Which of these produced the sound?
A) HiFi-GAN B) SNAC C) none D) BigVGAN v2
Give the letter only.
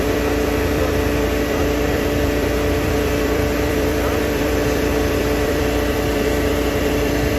D